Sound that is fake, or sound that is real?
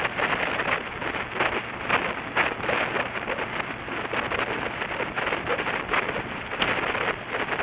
real